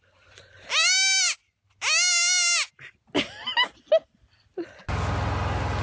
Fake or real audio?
real